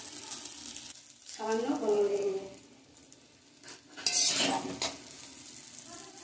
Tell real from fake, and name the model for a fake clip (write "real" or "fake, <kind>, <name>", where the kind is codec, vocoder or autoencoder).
real